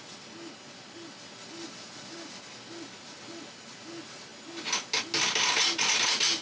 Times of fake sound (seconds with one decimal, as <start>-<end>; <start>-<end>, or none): none